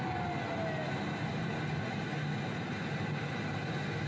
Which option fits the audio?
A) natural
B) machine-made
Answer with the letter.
A